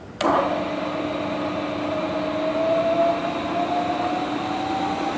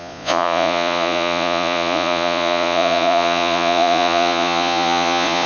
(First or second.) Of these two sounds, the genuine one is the first